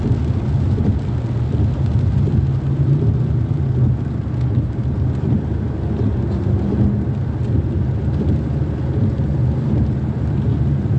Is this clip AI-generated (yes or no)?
no